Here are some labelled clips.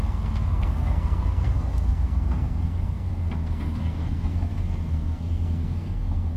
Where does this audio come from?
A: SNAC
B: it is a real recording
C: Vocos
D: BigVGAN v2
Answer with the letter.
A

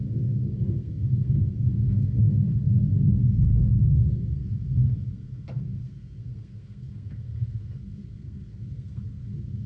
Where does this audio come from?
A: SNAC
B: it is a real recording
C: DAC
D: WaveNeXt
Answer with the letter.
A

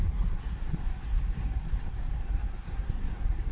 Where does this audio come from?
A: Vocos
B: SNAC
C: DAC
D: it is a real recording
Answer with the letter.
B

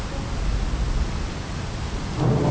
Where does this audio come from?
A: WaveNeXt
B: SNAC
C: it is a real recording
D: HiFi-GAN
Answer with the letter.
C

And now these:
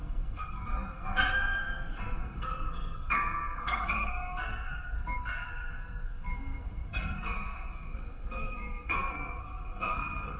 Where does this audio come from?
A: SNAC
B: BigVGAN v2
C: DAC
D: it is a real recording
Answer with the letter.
A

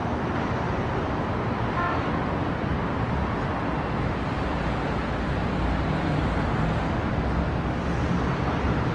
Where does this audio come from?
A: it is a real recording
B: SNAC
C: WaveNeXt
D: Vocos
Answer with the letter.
A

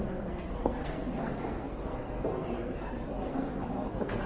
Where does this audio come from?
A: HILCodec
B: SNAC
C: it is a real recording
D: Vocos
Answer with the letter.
B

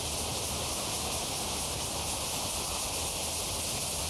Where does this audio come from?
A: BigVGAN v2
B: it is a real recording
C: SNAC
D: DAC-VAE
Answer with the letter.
B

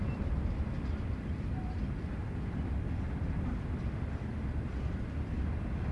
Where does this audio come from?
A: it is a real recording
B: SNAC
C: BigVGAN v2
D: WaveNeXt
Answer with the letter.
A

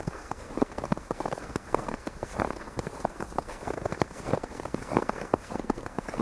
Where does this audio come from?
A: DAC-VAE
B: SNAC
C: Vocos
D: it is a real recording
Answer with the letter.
B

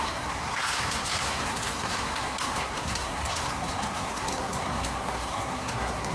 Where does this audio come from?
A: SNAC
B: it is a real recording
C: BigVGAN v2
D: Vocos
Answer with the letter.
A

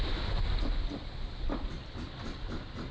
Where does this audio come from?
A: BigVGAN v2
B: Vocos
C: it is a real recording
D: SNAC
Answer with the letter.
C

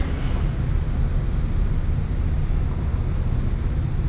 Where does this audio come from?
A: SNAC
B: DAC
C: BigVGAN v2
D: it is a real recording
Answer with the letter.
D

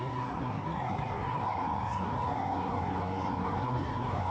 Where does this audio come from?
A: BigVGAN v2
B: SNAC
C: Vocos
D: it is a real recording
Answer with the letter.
B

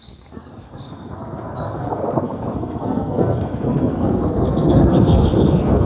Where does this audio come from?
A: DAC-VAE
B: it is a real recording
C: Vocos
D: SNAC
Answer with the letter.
D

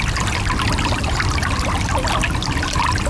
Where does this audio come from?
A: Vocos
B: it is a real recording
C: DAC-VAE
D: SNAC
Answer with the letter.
B